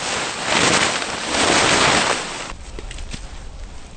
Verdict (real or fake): real